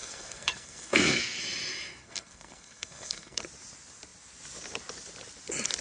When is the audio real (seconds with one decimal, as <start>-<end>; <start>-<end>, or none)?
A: 1.4-2.0; 3.4-5.8